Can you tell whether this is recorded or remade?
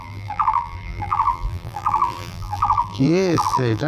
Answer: remade